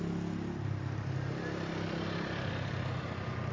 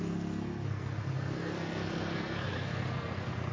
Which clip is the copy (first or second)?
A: second